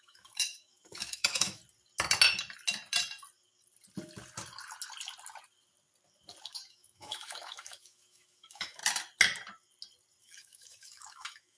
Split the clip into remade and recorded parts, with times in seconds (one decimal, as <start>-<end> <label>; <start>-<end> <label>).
0.0-1.6 remade; 1.6-6.4 recorded; 6.4-8.8 remade; 8.8-10.2 recorded; 10.2-11.6 remade